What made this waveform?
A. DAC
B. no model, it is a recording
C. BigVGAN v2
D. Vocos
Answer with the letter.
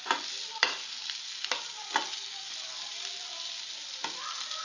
B